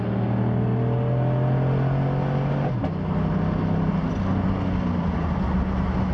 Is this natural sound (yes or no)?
yes